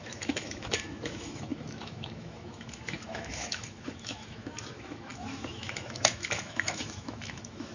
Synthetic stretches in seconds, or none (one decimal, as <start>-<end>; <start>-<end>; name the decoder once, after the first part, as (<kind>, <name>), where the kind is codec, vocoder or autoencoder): 0.0-7.7 (autoencoder, DAC-VAE)